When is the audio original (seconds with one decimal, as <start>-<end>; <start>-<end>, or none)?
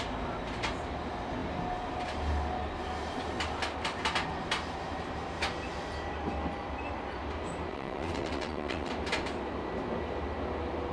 0.0-7.7; 8.9-10.9